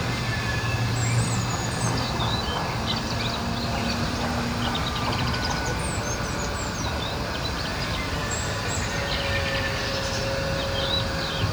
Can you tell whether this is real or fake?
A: fake